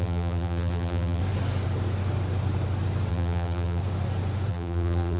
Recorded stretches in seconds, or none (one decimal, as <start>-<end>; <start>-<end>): 1.2-3.1; 3.8-4.5